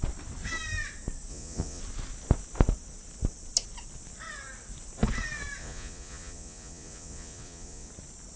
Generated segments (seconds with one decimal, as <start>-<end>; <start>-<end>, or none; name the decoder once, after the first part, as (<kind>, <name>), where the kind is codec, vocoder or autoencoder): 1.3-1.8 (vocoder, Vocos); 5.6-7.9